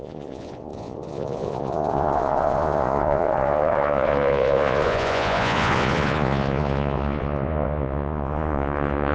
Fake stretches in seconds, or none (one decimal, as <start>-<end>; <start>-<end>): 0.0-9.1